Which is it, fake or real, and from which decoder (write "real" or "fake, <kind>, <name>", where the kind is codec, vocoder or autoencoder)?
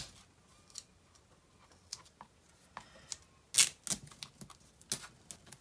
real